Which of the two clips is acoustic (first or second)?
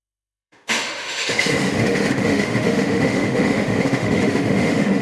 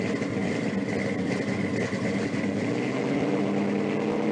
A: second